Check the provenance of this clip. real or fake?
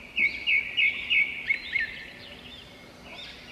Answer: real